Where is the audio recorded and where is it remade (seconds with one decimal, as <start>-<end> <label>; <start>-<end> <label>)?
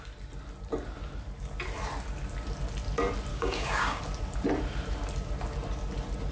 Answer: 0.0-3.3 recorded; 3.3-4.0 remade; 4.0-6.3 recorded